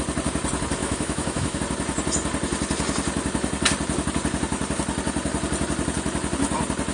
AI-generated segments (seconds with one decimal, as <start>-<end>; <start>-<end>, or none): 0.8-1.6